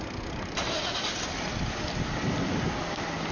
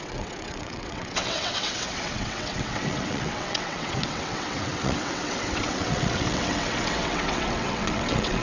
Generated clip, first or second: second